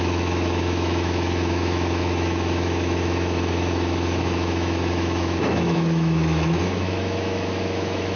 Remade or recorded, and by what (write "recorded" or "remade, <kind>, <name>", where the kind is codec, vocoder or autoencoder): remade, autoencoder, DAC-VAE